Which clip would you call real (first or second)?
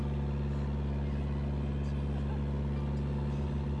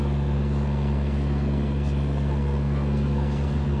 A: first